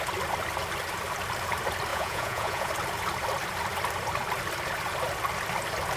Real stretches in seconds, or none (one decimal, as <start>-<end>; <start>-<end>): 0.0-1.9; 2.7-6.0